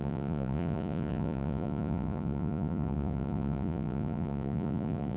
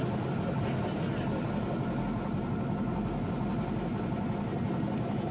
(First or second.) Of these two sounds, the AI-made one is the first